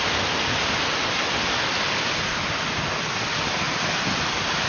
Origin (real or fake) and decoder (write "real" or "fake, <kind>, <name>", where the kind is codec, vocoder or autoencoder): real